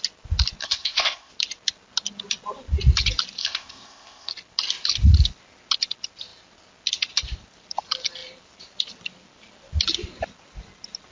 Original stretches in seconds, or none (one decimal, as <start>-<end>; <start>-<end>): 0.0-0.6; 1.3-3.4; 4.3-11.1